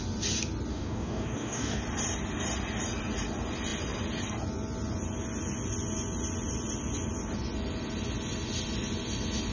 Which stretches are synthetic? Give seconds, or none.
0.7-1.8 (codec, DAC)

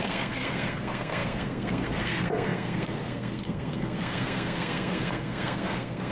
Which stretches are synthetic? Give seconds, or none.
0.0-6.1 (codec, SNAC)

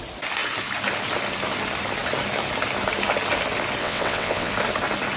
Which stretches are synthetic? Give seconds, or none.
3.8-4.5 (vocoder, WaveNeXt)

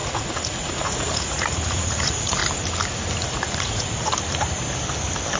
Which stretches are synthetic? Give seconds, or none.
0.0-2.4 (vocoder, Vocos); 3.3-4.1

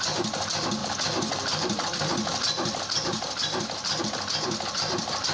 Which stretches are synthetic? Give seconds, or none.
none

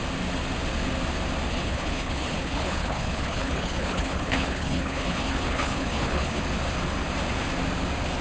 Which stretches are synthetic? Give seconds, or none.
1.5-6.4 (codec, HILCodec)

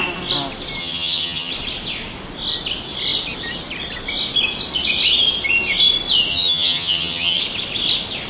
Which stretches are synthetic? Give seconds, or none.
0.8-1.5 (vocoder, HiFi-GAN); 6.3-7.4

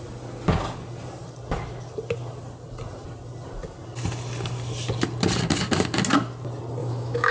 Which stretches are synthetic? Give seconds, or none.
6.8-7.3 (autoencoder, DAC-VAE)